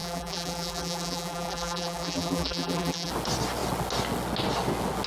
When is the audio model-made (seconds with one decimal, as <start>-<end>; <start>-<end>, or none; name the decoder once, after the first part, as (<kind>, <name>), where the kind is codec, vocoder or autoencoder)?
0.0-3.1 (vocoder, BigVGAN v2)